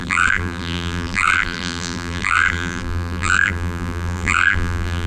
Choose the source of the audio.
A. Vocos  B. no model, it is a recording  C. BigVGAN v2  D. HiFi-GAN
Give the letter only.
C